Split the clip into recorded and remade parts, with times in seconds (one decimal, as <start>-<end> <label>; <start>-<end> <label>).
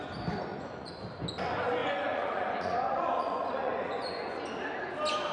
0.0-0.5 recorded; 0.5-1.0 remade; 1.0-1.8 recorded; 1.8-4.4 remade; 4.4-5.3 recorded